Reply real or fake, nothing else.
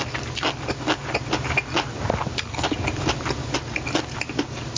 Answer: real